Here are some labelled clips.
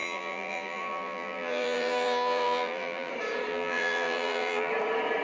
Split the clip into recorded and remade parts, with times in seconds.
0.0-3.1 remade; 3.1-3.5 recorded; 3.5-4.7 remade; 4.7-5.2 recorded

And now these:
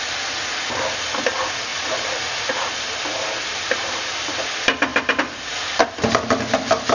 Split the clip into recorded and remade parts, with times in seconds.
0.0-6.9 recorded

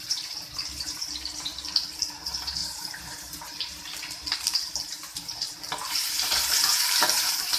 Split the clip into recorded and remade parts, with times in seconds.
0.0-1.5 remade; 1.5-2.2 recorded; 2.2-7.6 remade

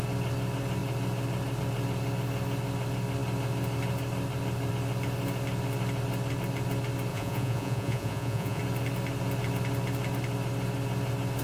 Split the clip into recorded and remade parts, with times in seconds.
0.0-7.1 recorded; 7.1-8.6 remade; 8.6-11.4 recorded

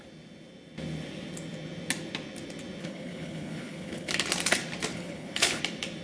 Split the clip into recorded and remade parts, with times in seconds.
0.0-2.8 recorded; 2.8-4.1 remade; 4.1-4.9 recorded; 4.9-5.6 remade; 5.6-6.0 recorded

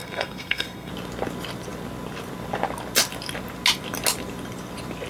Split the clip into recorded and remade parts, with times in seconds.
0.0-0.9 remade; 0.9-5.1 recorded

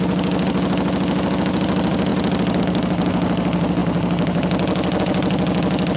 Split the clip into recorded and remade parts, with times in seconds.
0.0-6.0 recorded